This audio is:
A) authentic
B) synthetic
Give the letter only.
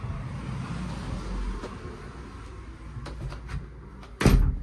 A